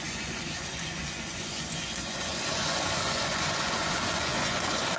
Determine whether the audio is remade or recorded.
remade